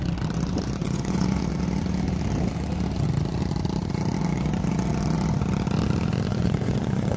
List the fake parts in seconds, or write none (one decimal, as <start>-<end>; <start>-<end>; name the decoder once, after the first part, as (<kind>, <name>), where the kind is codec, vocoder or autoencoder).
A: 0.8-1.4 (vocoder, Vocos); 6.3-7.2